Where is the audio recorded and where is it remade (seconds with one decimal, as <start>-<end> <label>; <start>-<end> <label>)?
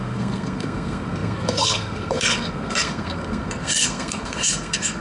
0.0-5.0 remade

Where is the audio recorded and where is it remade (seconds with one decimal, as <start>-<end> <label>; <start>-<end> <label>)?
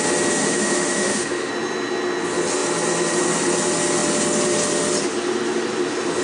0.0-0.4 recorded; 0.4-1.5 remade; 1.5-6.2 recorded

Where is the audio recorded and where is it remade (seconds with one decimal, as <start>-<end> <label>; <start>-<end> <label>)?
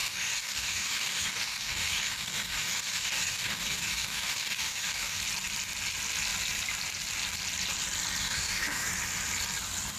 0.0-5.2 remade; 5.2-8.2 recorded; 8.2-8.9 remade; 8.9-10.0 recorded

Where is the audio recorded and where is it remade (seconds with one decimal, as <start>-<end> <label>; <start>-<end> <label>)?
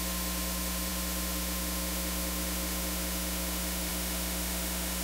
0.0-5.0 remade